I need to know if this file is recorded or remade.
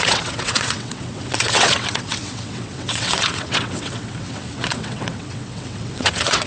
remade